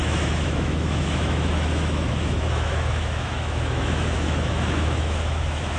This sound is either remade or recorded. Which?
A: remade